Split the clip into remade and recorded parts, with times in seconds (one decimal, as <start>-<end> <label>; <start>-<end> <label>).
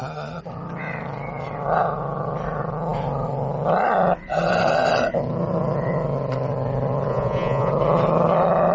0.0-7.1 recorded; 7.1-7.7 remade; 7.7-8.7 recorded